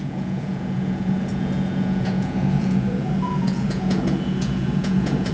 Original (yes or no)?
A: no